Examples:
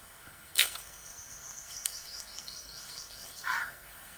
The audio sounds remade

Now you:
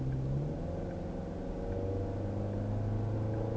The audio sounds recorded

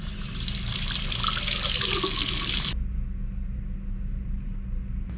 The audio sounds recorded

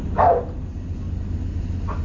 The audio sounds recorded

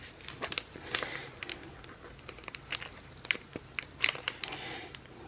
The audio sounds recorded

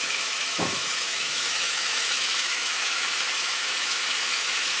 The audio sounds remade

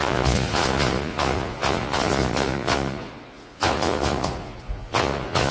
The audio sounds remade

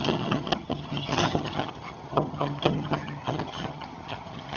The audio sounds remade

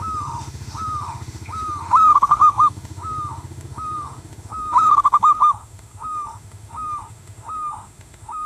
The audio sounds remade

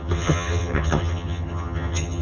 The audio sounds remade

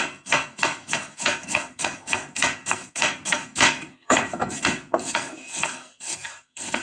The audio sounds remade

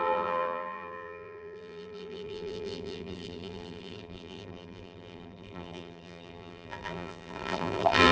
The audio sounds remade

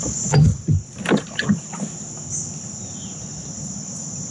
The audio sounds recorded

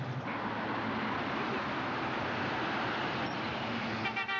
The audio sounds recorded